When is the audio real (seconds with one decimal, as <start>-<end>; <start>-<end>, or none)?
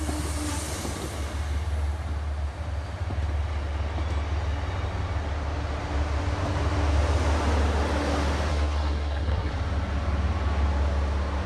0.0-8.5; 9.5-11.5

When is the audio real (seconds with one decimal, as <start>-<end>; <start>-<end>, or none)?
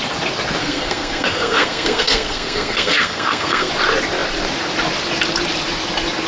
0.0-0.6; 3.7-6.3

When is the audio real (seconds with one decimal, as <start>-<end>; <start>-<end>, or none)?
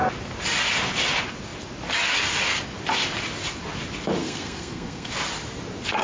0.0-4.2; 5.1-6.0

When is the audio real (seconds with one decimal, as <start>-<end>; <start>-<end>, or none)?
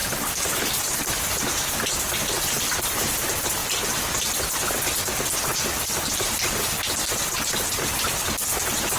0.0-9.0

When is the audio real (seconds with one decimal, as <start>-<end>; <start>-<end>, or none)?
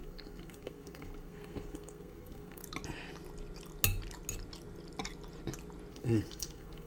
2.6-5.9